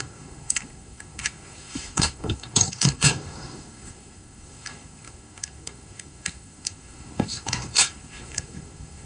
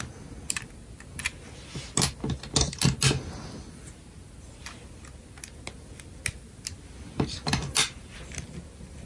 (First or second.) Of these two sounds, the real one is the second